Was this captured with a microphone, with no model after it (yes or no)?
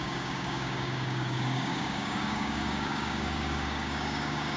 no